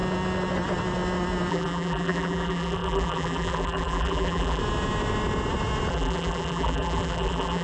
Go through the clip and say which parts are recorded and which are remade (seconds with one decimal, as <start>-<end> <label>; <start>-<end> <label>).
0.0-1.5 recorded; 1.5-4.6 remade; 4.6-5.9 recorded; 5.9-7.6 remade